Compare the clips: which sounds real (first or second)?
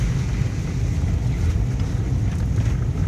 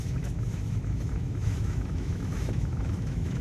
first